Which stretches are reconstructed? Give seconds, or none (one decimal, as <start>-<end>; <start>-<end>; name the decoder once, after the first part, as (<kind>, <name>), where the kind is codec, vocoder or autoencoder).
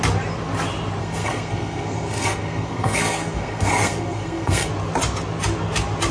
1.0-4.7 (codec, SNAC)